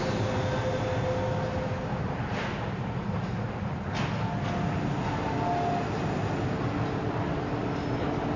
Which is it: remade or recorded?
recorded